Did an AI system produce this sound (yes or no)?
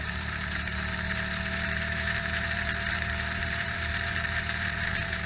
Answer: yes